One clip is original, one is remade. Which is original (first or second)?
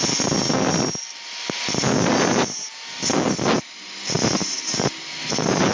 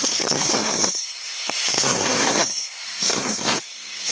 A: first